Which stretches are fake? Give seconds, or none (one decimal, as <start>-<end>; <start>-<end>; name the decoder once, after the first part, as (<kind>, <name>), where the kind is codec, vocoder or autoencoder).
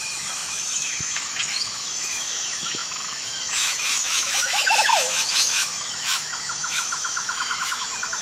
0.0-8.2 (autoencoder, DAC-VAE)